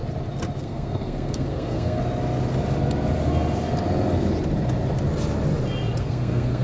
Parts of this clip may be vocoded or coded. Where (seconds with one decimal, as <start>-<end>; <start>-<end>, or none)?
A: 0.6-2.0; 6.0-6.6